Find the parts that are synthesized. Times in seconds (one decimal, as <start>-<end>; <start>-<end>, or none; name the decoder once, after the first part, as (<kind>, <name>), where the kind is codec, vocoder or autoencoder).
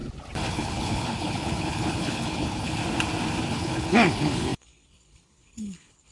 0.5-2.8 (codec, HILCodec); 3.4-6.1